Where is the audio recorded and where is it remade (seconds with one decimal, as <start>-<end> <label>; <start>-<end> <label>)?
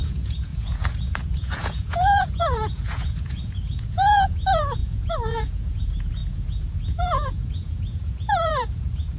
0.0-9.2 remade